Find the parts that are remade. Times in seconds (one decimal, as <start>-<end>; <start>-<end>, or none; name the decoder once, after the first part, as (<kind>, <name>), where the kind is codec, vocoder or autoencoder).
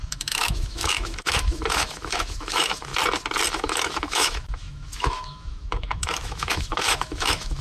0.0-2.9 (autoencoder, DAC-VAE); 3.5-7.6